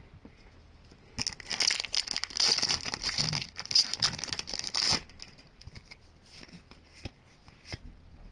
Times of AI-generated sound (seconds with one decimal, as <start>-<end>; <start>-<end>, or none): none